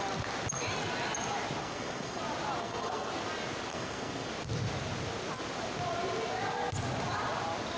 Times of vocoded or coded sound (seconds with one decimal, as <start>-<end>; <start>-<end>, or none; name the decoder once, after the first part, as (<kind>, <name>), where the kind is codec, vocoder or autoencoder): 1.6-2.2 (codec, SNAC); 2.6-3.1; 3.7-4.3